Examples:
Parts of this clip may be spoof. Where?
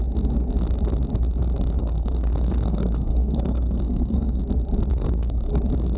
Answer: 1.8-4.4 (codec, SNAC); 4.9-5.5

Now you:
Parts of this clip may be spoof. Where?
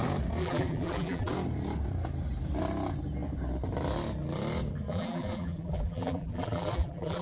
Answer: 0.4-1.3 (vocoder, BigVGAN v2); 4.9-7.2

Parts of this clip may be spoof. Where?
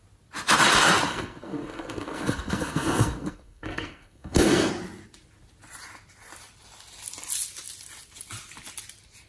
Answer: 1.1-4.7 (codec, SNAC)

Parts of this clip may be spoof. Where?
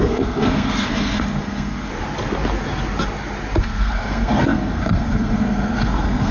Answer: 0.0-1.9 (codec, SNAC); 3.6-6.3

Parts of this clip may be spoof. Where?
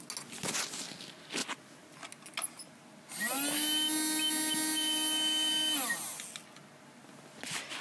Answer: none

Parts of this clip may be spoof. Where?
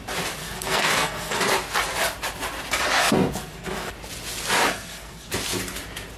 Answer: 0.4-1.5 (codec, SNAC); 3.0-3.9; 4.7-5.3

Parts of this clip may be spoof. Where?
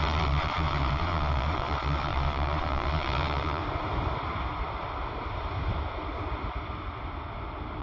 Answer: 0.0-3.6 (vocoder, Vocos)